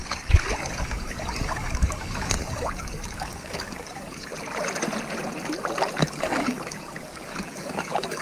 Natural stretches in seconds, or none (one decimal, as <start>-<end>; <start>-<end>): 4.3-6.0